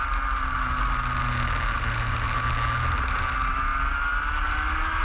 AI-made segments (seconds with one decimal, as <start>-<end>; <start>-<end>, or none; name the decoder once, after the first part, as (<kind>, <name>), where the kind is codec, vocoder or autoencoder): none